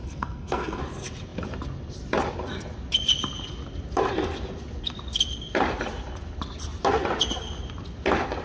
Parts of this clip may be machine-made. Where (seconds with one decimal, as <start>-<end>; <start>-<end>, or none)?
0.0-0.8